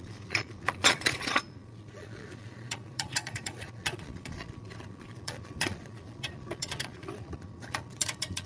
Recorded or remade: remade